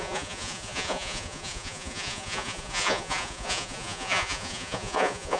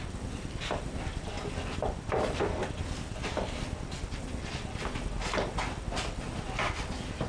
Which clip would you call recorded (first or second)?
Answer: second